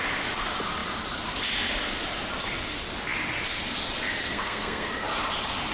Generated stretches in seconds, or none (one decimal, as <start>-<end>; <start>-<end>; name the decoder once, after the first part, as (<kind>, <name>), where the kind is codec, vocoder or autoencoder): 4.2-4.9 (codec, SNAC)